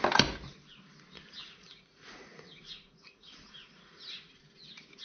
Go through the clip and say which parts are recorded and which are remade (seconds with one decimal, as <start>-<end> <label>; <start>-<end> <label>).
0.0-1.4 recorded; 1.4-4.4 remade; 4.4-5.0 recorded